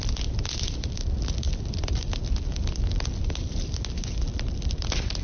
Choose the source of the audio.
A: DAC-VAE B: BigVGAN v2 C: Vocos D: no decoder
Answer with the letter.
D